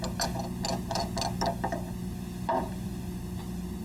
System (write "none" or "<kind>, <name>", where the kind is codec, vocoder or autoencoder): none